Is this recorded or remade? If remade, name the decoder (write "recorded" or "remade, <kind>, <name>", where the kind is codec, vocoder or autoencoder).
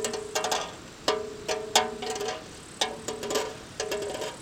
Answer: recorded